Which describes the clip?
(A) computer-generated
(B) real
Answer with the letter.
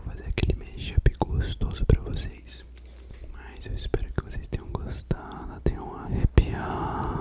B